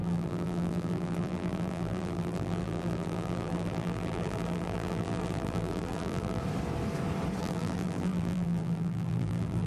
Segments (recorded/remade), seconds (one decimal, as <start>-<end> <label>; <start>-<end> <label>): 0.0-6.4 remade; 6.4-7.4 recorded; 7.4-9.7 remade